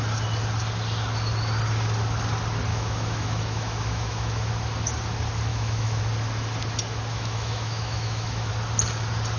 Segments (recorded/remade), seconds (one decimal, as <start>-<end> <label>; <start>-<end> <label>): 0.0-2.7 recorded; 2.7-4.5 remade; 4.5-5.5 recorded; 5.5-6.0 remade; 6.0-7.1 recorded; 7.1-8.5 remade; 8.5-9.4 recorded